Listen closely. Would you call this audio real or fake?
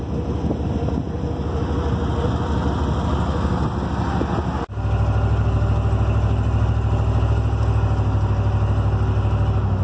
real